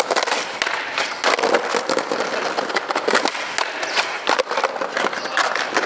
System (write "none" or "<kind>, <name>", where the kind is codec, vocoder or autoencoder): none